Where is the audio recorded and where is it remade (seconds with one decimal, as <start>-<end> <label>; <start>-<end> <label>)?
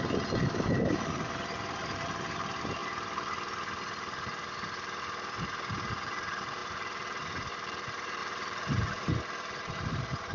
0.0-2.8 remade; 2.8-5.9 recorded; 5.9-10.3 remade